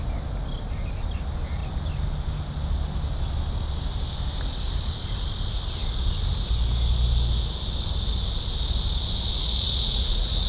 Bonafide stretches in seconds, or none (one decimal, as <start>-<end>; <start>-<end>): 0.0-9.4